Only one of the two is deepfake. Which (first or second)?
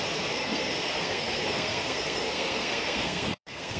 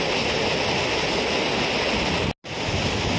first